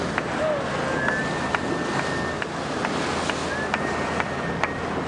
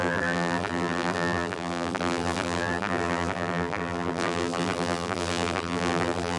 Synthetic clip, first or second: second